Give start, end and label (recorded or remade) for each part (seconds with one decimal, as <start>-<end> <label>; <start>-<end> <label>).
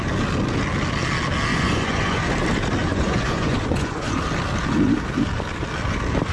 0.0-1.5 recorded; 1.5-2.3 remade; 2.3-2.8 recorded; 2.8-4.2 remade; 4.2-6.3 recorded